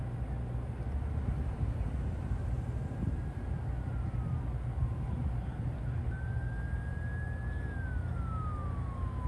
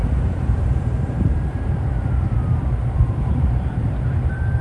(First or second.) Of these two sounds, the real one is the first